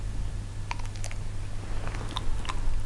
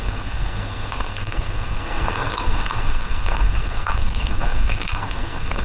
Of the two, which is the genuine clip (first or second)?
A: first